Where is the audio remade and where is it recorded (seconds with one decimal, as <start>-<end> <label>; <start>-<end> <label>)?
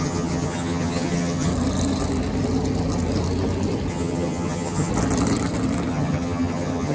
0.0-1.5 remade; 1.5-3.9 recorded; 3.9-4.9 remade; 4.9-5.9 recorded; 5.9-6.9 remade